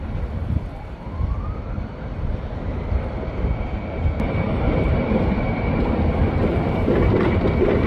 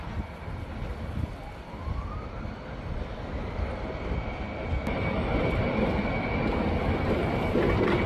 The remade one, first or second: first